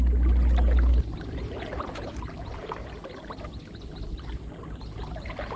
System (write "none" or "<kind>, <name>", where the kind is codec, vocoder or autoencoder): none